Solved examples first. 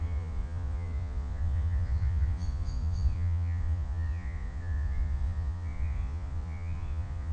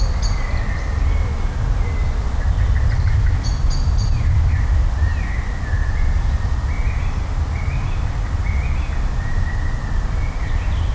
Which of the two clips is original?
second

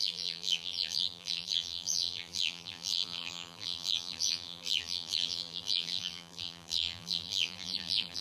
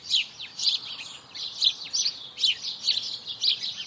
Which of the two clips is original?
second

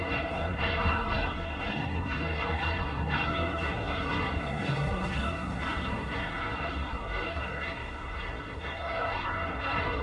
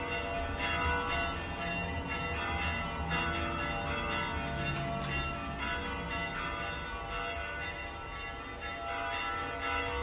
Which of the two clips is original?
second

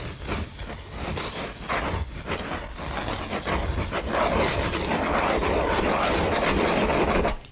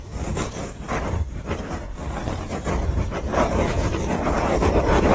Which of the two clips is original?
first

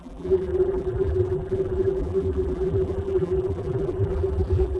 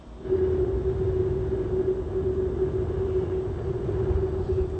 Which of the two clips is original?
second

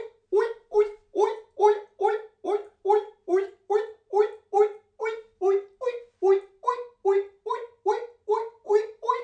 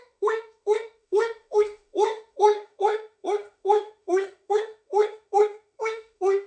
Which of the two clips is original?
first